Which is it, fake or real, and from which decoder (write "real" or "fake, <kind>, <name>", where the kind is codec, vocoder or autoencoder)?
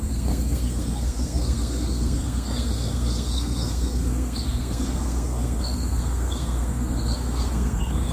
fake, codec, SNAC